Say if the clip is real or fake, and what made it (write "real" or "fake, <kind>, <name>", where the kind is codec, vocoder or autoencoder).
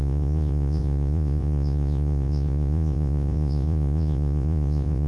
fake, vocoder, Vocos